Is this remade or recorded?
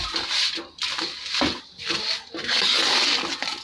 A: recorded